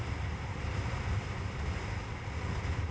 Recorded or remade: recorded